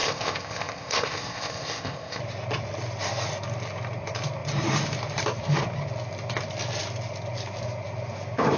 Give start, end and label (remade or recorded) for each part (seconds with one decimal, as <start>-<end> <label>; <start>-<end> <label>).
0.0-2.2 remade; 2.2-8.6 recorded